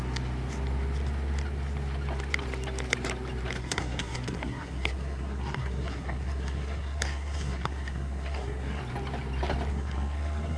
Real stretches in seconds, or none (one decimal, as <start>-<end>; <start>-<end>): 0.0-3.6; 8.8-9.7